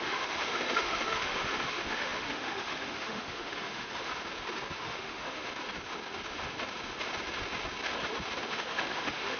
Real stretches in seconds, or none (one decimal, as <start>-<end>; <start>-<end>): 4.1-4.8; 5.5-8.5